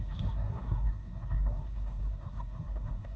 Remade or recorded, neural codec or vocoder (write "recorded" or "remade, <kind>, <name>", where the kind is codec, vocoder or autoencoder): remade, codec, SNAC